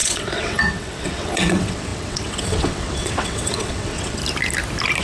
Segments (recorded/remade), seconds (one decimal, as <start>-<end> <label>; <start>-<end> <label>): 0.0-4.2 remade; 4.2-5.0 recorded